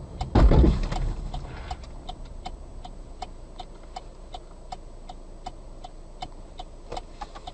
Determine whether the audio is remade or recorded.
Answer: recorded